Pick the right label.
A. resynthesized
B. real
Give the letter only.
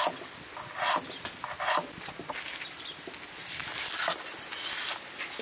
B